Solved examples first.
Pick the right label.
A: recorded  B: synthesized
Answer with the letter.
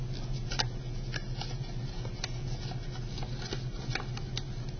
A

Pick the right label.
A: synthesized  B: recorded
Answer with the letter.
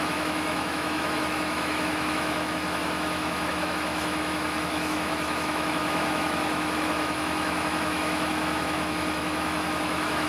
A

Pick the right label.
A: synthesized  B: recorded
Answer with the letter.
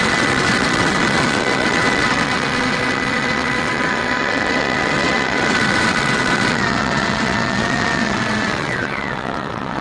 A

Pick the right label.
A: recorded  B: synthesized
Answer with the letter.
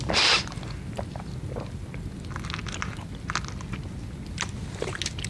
A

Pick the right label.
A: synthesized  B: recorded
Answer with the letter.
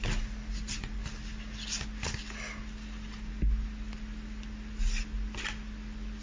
B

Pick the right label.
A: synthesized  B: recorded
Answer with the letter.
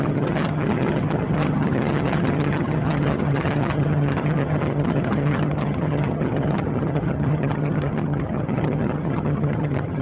A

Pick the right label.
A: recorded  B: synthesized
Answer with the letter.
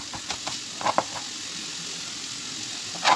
A